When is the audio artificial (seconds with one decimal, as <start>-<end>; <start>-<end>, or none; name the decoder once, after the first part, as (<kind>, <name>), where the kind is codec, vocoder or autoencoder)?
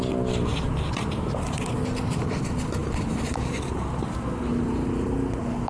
2.8-3.6 (vocoder, BigVGAN v2)